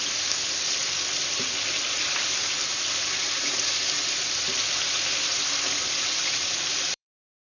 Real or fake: fake